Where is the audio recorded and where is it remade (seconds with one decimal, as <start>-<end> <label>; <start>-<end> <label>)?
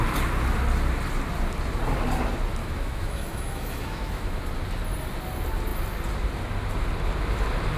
0.0-2.6 recorded; 2.6-4.4 remade; 4.4-7.8 recorded